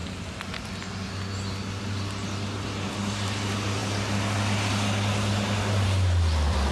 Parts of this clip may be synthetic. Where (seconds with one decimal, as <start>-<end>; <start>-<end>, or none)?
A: none